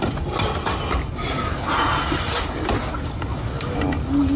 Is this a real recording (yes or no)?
yes